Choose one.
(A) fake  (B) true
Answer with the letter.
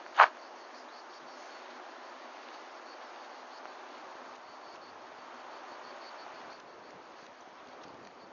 B